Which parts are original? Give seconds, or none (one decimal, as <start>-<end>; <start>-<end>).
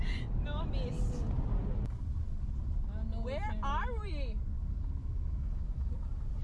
0.0-5.0; 5.9-6.4